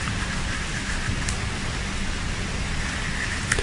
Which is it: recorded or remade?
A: recorded